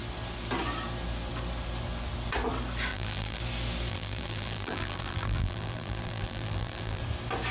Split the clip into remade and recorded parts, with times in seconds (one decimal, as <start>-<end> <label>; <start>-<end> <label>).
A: 0.0-2.9 recorded; 2.9-3.4 remade; 3.4-3.9 recorded; 3.9-7.0 remade; 7.0-7.5 recorded